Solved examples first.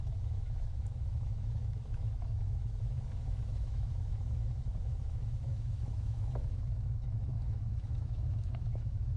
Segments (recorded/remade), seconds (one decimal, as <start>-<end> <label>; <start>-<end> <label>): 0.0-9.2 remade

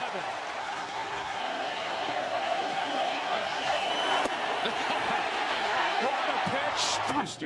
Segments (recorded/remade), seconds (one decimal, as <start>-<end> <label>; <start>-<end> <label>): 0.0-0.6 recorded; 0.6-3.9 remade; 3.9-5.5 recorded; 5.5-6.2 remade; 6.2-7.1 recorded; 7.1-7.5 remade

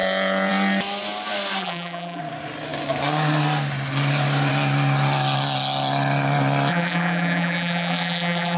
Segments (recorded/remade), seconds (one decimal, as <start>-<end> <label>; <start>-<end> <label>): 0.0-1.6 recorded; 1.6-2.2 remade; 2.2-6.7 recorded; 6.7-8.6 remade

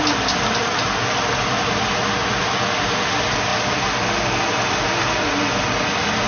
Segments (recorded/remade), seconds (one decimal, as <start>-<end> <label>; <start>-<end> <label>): 0.0-6.3 recorded